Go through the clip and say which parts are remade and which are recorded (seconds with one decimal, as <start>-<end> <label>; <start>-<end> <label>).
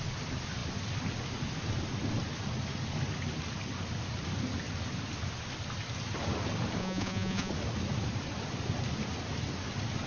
0.0-6.8 recorded; 6.8-7.5 remade; 7.5-10.1 recorded